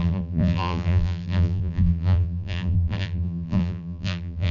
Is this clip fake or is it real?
fake